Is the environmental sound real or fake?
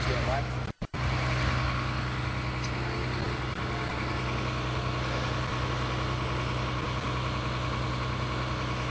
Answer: real